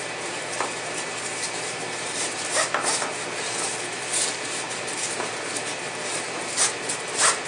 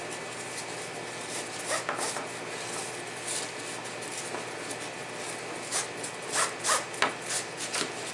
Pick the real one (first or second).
second